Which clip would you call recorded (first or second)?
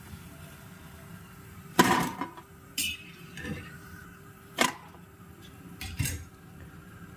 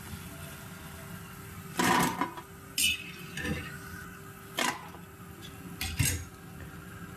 second